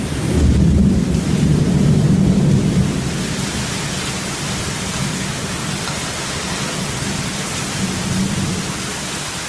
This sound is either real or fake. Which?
real